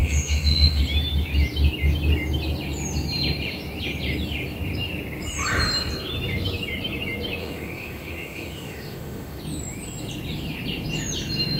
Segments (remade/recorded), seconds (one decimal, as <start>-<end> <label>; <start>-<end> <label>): 0.0-0.8 remade; 0.8-7.4 recorded; 7.4-9.4 remade; 9.4-11.6 recorded